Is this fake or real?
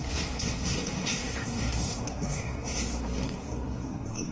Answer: fake